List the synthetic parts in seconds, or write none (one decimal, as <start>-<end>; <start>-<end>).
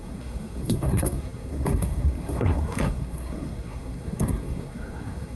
0.0-5.4